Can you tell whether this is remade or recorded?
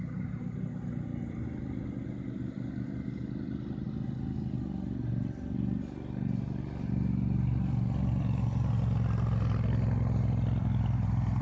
recorded